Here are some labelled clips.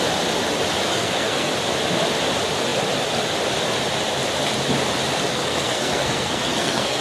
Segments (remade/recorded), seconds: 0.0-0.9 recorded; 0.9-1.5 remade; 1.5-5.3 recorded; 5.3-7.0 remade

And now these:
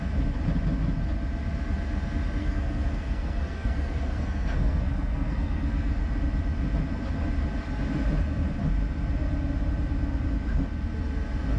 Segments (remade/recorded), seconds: 0.0-2.4 recorded; 2.4-6.0 remade; 6.0-11.6 recorded

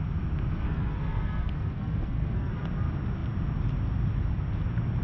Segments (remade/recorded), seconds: 0.0-0.6 recorded; 0.6-2.5 remade; 2.5-5.0 recorded

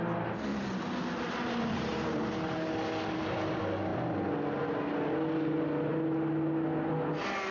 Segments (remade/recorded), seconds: 0.0-0.5 recorded; 0.5-2.1 remade; 2.1-7.5 recorded

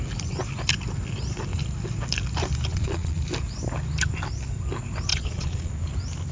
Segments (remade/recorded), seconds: 0.0-2.7 recorded; 2.7-3.2 remade; 3.2-5.1 recorded; 5.1-5.7 remade; 5.7-6.3 recorded